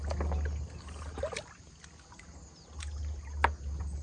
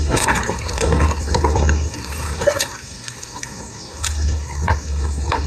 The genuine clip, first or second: first